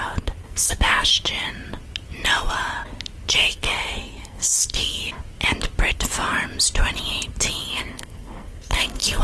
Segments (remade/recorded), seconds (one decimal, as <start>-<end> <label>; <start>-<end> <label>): 0.0-0.4 recorded; 0.4-1.1 remade; 1.1-3.4 recorded; 3.4-5.0 remade; 5.0-7.6 recorded; 7.6-9.2 remade